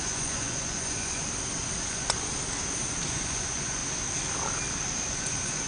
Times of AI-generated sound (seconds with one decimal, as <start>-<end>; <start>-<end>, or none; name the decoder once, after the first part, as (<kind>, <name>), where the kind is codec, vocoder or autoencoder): 0.0-1.2 (vocoder, Vocos); 1.9-2.3; 3.1-3.8; 5.1-5.7